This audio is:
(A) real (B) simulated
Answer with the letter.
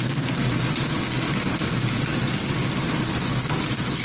A